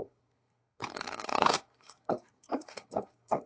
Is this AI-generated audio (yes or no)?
yes